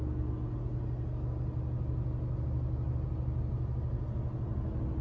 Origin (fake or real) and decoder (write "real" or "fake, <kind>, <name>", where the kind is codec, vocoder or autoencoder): real